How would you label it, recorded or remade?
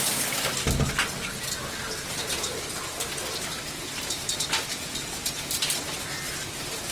recorded